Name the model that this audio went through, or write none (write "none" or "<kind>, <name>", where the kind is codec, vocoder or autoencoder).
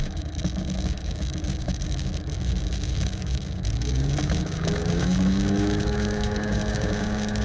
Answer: codec, DAC